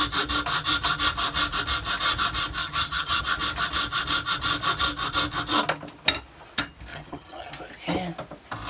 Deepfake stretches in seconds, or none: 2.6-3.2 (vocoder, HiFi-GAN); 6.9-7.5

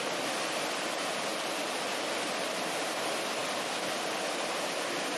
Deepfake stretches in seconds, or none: 3.4-4.6 (vocoder, BigVGAN v2)

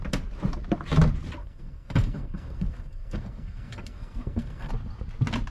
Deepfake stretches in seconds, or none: 1.4-4.7 (codec, SNAC)

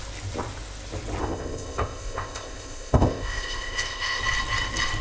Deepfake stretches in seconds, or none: 1.2-4.2 (codec, ZipCodec)